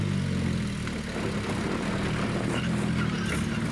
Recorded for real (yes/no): yes